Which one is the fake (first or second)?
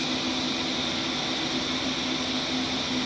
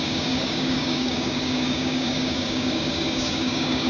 second